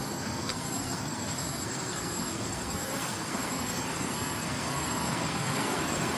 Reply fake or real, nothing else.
fake